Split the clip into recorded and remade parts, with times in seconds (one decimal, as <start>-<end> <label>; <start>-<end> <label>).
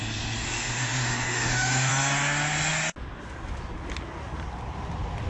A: 0.0-0.6 recorded; 0.6-1.9 remade; 1.9-5.3 recorded